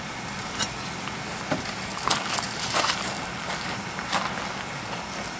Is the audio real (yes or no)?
yes